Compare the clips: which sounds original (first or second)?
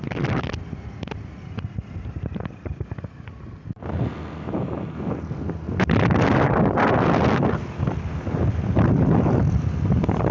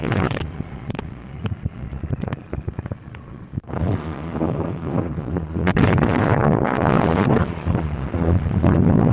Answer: first